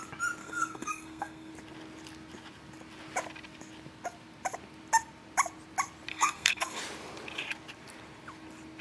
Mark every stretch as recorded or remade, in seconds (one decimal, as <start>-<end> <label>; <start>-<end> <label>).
0.0-0.4 recorded; 0.4-1.5 remade; 1.5-6.1 recorded; 6.1-6.8 remade; 6.8-8.8 recorded